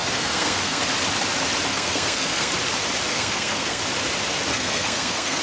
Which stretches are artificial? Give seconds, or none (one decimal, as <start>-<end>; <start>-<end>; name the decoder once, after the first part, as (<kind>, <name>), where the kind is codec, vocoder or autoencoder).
0.0-0.8 (codec, SNAC); 1.7-2.5; 3.1-3.8; 4.5-5.4